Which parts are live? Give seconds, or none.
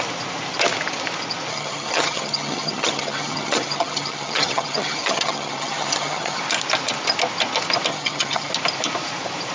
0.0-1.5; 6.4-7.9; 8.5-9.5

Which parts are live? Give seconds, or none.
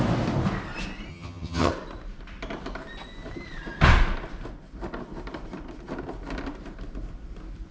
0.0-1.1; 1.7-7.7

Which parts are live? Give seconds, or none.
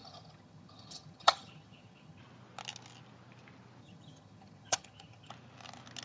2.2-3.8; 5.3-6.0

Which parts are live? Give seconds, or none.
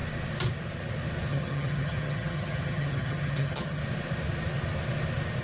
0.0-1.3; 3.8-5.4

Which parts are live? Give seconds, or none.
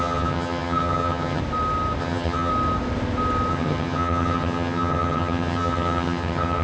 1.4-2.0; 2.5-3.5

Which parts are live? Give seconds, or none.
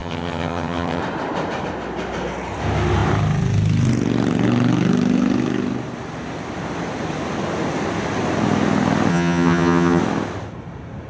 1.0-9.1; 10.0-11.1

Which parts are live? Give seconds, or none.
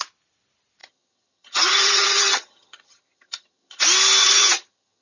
0.0-0.8; 3.8-4.2